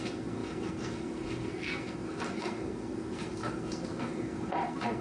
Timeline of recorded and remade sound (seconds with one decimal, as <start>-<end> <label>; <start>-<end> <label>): 0.0-5.0 remade